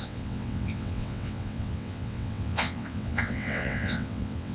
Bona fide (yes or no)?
no